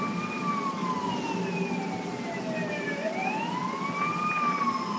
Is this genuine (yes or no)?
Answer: yes